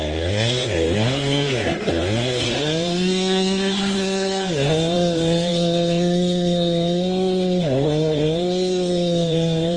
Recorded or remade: remade